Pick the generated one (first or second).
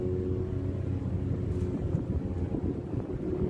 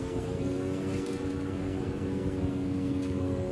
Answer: second